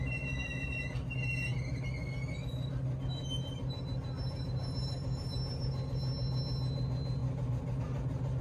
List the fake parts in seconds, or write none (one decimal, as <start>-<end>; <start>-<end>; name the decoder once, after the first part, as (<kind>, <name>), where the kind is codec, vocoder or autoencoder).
7.2-7.8 (vocoder, BigVGAN v2)